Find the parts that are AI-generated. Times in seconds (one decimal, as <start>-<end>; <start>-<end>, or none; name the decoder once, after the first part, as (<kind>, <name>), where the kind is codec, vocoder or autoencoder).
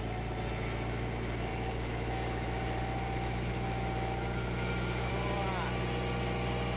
1.5-5.1 (autoencoder, DAC-VAE)